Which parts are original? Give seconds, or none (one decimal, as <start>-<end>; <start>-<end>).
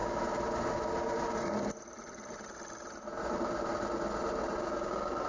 0.0-5.3